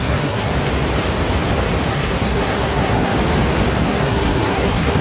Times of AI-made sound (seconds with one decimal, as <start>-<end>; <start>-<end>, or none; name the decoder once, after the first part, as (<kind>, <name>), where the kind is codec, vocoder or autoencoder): 0.0-0.5 (codec, SNAC); 1.9-3.1; 3.8-5.0